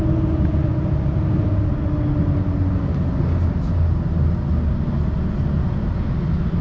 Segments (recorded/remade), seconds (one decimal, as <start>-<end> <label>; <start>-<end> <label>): 0.0-6.6 recorded